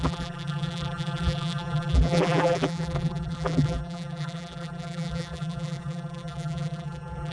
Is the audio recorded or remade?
remade